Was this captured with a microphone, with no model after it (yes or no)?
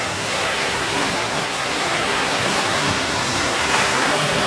no